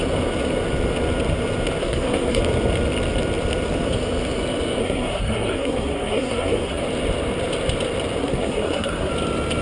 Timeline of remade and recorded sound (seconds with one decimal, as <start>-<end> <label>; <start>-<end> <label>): 0.0-1.8 recorded; 1.8-2.4 remade; 2.4-4.8 recorded; 4.8-6.8 remade; 6.8-8.2 recorded; 8.2-9.1 remade; 9.1-9.6 recorded